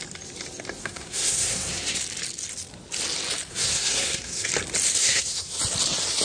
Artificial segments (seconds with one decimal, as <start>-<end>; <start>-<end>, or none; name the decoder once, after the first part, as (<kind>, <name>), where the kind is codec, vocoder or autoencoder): 0.8-2.0 (codec, SNAC); 3.5-4.5; 5.0-5.6